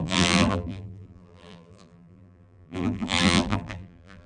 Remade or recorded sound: remade